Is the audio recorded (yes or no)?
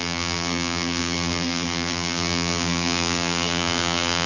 no